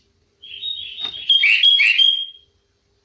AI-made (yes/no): no